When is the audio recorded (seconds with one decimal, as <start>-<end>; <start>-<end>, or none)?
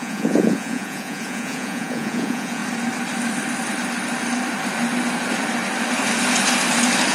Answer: 2.6-7.1